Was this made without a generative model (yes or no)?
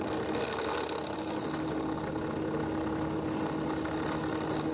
yes